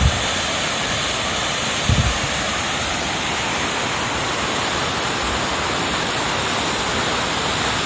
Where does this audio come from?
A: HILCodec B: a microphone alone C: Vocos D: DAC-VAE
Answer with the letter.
B